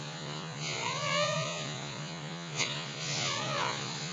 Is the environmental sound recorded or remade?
remade